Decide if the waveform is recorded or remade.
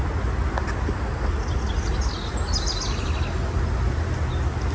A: recorded